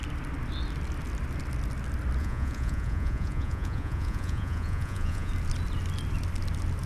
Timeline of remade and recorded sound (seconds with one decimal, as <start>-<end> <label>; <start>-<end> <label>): 0.0-2.2 recorded; 2.2-5.3 remade; 5.3-6.9 recorded